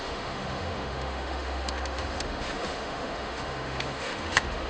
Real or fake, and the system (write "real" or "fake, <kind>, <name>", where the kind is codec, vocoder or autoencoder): fake, autoencoder, DAC-VAE